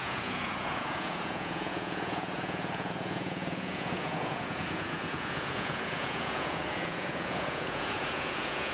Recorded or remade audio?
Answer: remade